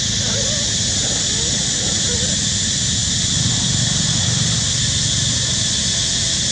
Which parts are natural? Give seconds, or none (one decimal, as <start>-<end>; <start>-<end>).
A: 0.0-6.5